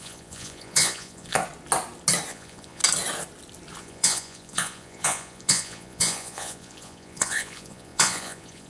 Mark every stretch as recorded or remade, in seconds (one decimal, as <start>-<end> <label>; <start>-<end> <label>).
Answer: 0.0-1.4 remade; 1.4-2.3 recorded; 2.3-2.8 remade; 2.8-3.8 recorded; 3.8-8.7 remade